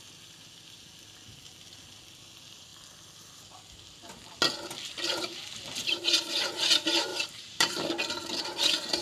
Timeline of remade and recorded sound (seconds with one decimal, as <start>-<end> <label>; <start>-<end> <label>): 0.0-5.8 recorded; 5.8-6.5 remade; 6.5-7.1 recorded; 7.1-7.9 remade; 7.9-9.0 recorded